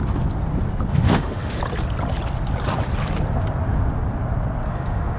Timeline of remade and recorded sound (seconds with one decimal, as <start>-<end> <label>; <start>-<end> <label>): 0.0-0.9 recorded; 0.9-1.6 remade; 1.6-4.7 recorded; 4.7-5.2 remade